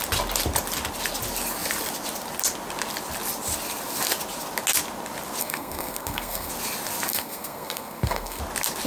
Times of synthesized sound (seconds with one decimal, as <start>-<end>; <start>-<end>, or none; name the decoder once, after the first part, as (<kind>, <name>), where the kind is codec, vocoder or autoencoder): 5.4-6.5 (codec, SNAC); 7.1-8.4